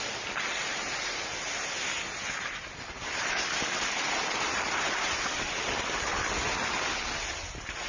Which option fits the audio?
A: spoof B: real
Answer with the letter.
B